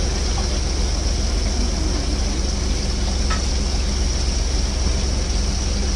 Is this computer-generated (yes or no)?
no